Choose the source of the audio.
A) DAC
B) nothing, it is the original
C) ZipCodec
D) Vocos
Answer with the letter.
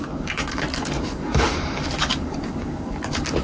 A